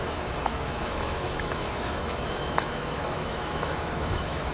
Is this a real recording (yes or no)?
no